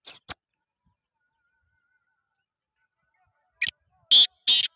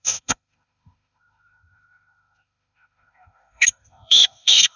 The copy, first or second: second